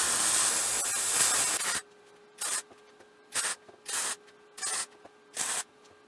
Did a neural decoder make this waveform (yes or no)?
no